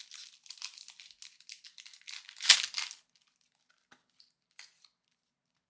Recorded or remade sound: recorded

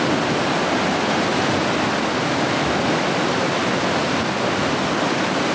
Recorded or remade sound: recorded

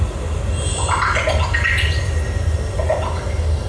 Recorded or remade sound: recorded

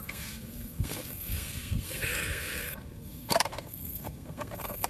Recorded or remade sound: remade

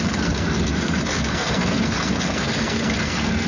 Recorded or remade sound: remade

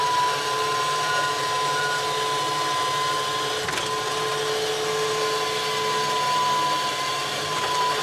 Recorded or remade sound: recorded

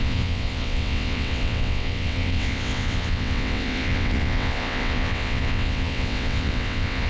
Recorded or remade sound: remade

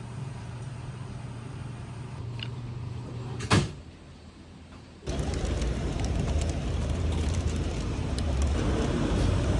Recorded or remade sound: remade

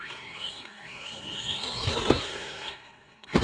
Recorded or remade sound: remade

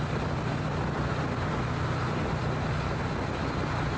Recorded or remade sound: recorded